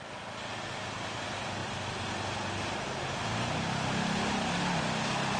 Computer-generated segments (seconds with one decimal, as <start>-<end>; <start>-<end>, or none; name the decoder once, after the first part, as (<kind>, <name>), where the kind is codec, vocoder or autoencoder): none

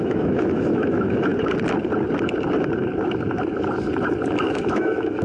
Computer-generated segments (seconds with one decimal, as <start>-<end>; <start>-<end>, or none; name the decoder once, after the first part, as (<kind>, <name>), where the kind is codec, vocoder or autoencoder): 0.0-1.3 (autoencoder, DAC-VAE); 4.4-5.2